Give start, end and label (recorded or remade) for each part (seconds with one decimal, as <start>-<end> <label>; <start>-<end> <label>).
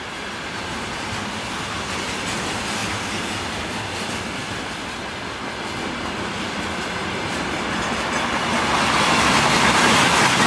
0.0-10.5 recorded